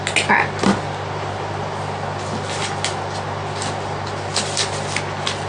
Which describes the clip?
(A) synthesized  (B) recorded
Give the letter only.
B